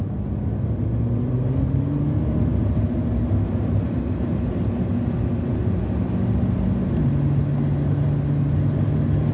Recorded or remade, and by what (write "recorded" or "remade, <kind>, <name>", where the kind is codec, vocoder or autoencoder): recorded